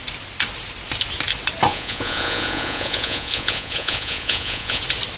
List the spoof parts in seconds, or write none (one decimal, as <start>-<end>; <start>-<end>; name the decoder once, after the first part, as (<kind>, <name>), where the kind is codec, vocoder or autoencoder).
1.7-4.8 (vocoder, Vocos)